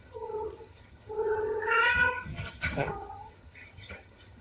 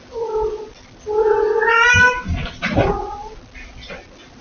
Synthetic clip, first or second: first